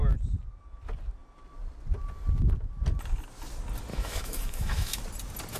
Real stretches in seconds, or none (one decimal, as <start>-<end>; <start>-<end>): 0.0-3.9; 5.0-5.6